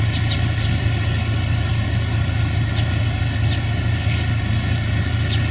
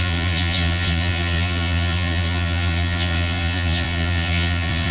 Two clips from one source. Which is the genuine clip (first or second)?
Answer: first